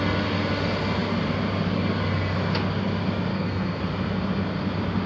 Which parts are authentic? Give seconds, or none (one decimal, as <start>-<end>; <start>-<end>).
0.0-3.3; 3.8-5.1